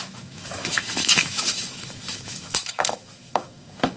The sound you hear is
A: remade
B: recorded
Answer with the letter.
A